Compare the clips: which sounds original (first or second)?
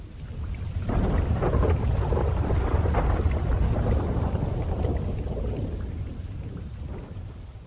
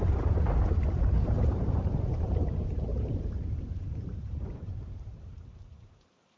first